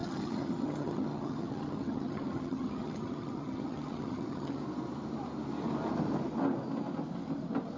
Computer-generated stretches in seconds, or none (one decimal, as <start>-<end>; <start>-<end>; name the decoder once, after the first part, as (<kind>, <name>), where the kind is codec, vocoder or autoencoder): 0.0-4.6 (vocoder, HiFi-GAN)